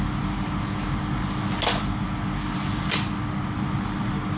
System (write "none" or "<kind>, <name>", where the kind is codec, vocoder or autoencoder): none